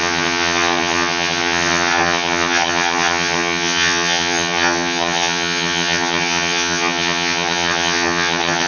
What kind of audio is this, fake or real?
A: fake